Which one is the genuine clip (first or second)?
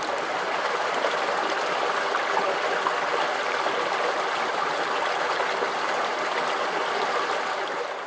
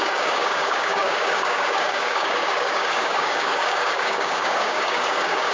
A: first